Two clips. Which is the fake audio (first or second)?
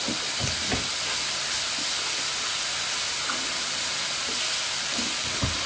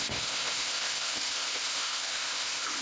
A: second